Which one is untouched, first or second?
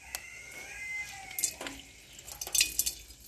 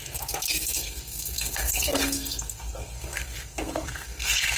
first